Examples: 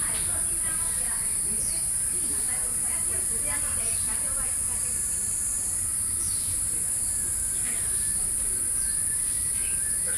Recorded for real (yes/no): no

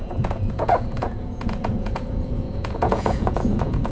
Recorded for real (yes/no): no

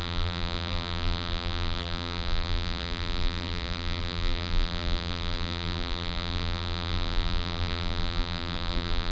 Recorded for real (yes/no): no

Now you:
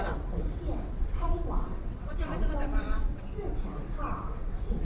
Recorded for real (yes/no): no